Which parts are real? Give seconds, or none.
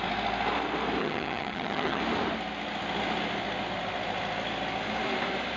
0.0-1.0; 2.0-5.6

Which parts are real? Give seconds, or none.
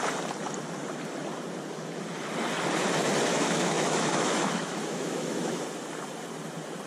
0.0-3.3; 5.6-6.9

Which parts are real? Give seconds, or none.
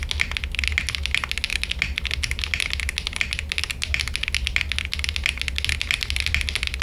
0.0-6.8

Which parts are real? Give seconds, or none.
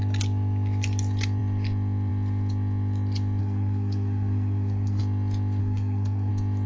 0.0-3.4; 5.0-5.6; 6.3-6.7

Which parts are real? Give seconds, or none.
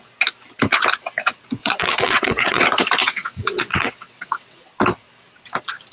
0.0-1.6; 2.6-3.0; 4.7-5.9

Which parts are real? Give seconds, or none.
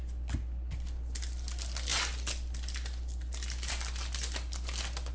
0.0-5.1